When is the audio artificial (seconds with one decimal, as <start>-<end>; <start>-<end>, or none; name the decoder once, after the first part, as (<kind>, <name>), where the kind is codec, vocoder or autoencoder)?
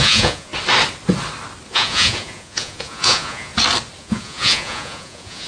0.0-0.5 (vocoder, Vocos); 1.7-3.5; 4.0-5.5